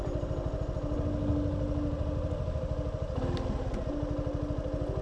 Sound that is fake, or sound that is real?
real